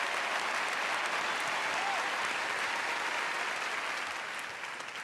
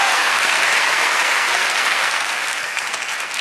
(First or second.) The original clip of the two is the first